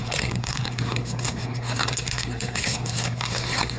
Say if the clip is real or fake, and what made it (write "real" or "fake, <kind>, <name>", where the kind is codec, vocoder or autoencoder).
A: fake, codec, SNAC